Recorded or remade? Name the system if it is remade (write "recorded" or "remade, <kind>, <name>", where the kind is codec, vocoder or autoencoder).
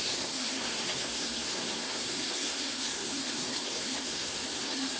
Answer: remade, codec, SNAC